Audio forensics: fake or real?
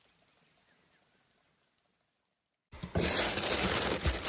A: real